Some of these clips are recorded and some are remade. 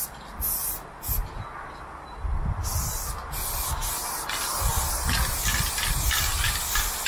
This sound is recorded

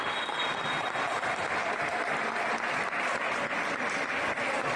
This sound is recorded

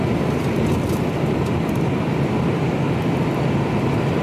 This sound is recorded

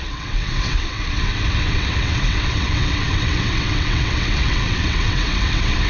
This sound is remade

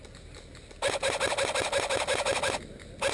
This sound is recorded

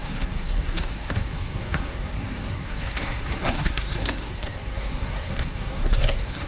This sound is remade